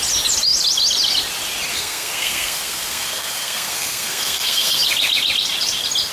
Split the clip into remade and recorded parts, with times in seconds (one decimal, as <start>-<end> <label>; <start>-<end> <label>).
0.0-1.7 recorded; 1.7-4.8 remade; 4.8-6.1 recorded